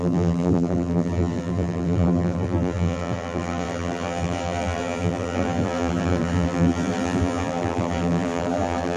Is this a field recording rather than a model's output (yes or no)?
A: no